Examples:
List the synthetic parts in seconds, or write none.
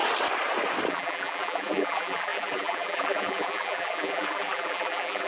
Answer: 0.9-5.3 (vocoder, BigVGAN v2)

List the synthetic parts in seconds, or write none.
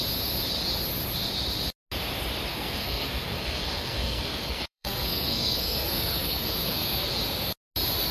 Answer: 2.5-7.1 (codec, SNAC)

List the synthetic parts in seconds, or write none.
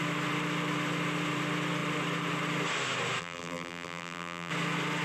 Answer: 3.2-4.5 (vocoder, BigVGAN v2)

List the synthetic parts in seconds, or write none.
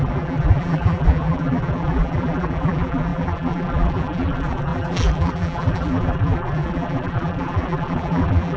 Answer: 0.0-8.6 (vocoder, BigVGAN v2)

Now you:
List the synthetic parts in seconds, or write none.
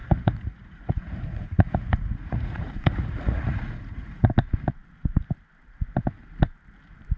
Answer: 0.0-4.3 (vocoder, Vocos)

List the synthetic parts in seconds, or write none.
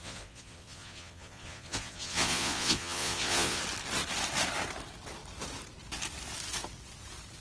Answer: 0.0-3.6 (vocoder, Vocos)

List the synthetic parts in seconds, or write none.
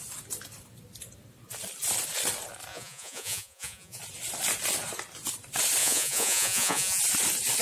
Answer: 2.7-4.0 (vocoder, Vocos); 5.8-7.0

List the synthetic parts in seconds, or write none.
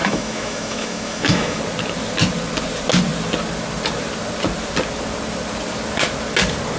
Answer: 0.0-1.6 (autoencoder, DAC-VAE)